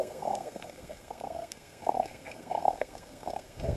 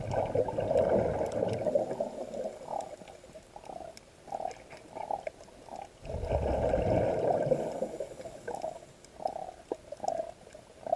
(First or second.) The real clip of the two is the second